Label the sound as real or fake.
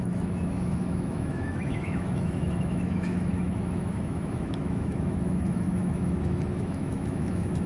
fake